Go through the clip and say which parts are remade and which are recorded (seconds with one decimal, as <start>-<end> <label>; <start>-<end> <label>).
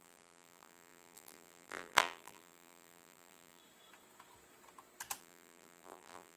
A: 0.0-3.6 remade; 3.6-5.2 recorded; 5.2-6.4 remade